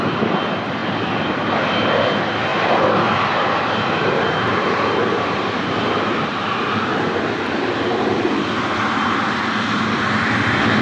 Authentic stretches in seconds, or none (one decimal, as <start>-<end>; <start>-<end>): 0.0-2.5; 3.2-4.5; 8.3-10.8